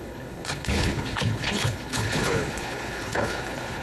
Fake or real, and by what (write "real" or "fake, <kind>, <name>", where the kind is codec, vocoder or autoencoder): fake, codec, HILCodec